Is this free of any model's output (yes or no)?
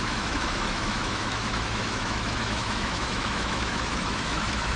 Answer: no